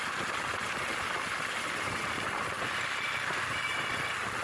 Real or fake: real